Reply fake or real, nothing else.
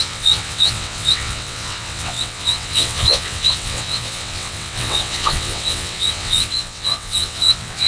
fake